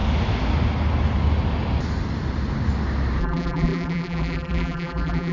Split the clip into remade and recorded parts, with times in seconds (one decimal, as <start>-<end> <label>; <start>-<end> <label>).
0.0-3.2 recorded; 3.2-5.3 remade